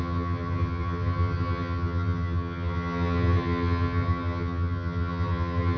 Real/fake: fake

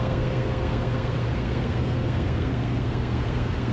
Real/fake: fake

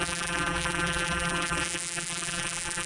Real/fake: fake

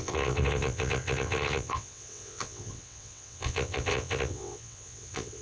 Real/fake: fake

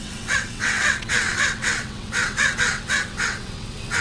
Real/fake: fake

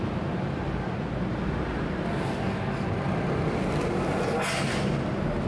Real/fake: real